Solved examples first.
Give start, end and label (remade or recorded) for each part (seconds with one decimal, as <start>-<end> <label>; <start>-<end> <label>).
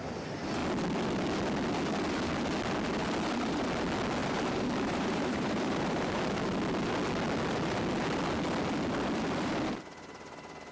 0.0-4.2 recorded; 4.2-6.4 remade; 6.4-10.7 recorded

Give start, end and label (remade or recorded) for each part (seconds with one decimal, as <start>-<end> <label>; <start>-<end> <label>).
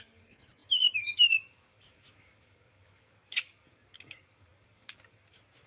0.0-5.7 remade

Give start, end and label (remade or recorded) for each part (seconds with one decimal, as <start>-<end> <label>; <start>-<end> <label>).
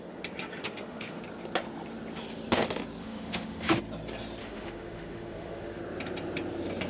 0.0-0.6 recorded; 0.6-1.2 remade; 1.2-3.0 recorded; 3.0-3.8 remade; 3.8-4.4 recorded; 4.4-5.8 remade; 5.8-6.9 recorded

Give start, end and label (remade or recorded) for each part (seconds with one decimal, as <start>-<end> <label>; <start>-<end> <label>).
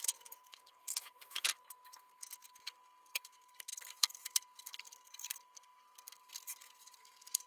0.0-7.5 remade